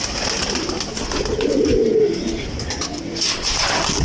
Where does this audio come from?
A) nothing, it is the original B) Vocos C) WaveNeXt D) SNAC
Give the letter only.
A